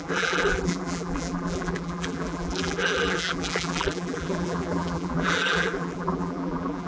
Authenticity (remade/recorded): remade